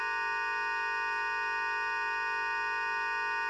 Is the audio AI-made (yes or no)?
no